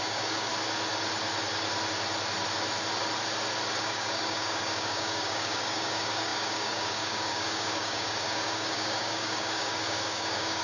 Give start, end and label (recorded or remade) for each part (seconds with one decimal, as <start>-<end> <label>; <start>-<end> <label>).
0.0-0.5 remade; 0.5-3.8 recorded; 3.8-10.6 remade